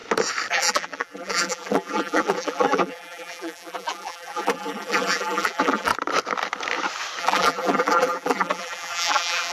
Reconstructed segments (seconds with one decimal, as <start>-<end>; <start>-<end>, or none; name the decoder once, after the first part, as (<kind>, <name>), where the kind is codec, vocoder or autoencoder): 0.5-5.9 (vocoder, BigVGAN v2); 7.2-9.5